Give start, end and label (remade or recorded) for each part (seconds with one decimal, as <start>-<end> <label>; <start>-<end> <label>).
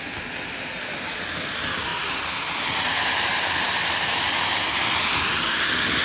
0.0-6.0 recorded